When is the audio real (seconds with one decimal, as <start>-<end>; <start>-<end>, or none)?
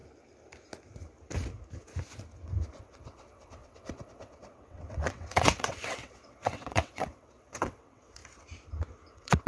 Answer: 0.0-2.8; 8.2-9.1